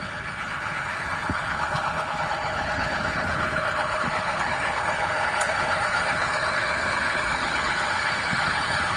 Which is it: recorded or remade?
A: remade